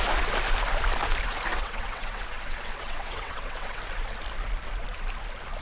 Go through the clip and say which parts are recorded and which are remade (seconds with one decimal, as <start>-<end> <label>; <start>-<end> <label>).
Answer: 0.0-1.5 recorded; 1.5-3.8 remade; 3.8-5.6 recorded